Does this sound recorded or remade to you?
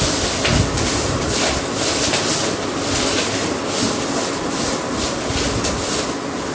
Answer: recorded